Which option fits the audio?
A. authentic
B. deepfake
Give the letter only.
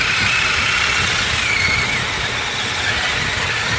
A